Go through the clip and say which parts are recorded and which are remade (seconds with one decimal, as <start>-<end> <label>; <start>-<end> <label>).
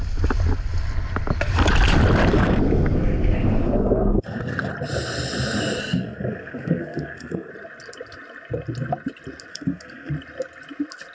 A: 0.0-2.3 recorded; 2.3-4.7 remade; 4.7-5.8 recorded; 5.8-7.5 remade; 7.5-9.5 recorded; 9.5-10.1 remade; 10.1-11.1 recorded